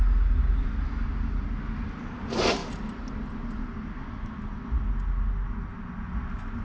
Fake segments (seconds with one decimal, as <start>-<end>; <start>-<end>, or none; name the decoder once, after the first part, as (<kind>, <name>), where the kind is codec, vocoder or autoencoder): none